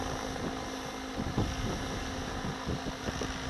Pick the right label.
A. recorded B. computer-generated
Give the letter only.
A